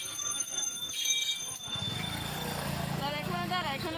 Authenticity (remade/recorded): remade